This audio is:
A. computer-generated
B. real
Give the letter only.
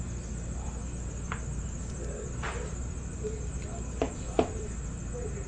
A